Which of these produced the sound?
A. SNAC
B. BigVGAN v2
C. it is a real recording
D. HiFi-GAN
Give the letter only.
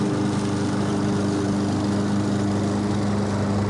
C